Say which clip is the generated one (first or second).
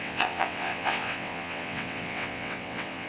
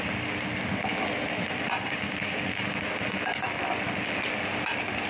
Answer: first